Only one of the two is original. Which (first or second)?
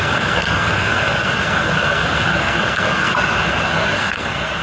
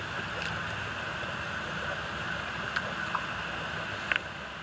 second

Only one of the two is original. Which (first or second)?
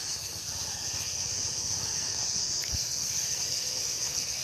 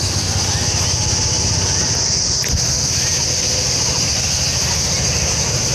second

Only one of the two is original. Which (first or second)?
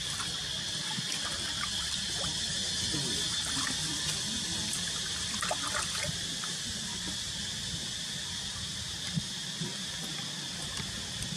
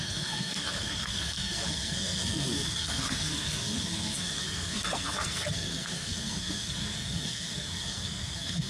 first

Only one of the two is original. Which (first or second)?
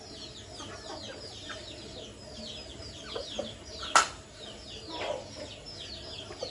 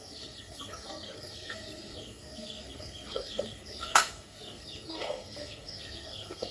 first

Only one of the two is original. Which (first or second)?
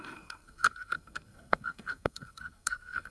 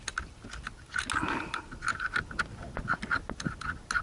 second